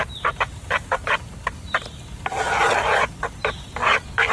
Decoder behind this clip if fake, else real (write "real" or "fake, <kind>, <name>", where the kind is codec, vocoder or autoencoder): real